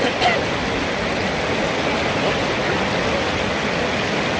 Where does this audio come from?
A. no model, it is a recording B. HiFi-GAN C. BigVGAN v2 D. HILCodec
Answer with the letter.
A